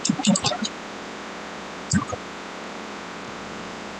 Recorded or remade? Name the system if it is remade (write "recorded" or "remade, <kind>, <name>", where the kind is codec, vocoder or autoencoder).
remade, vocoder, Vocos